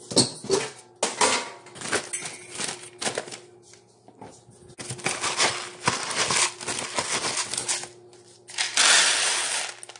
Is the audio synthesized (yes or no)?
no